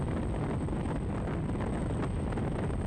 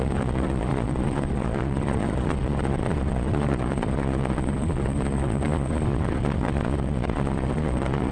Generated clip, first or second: second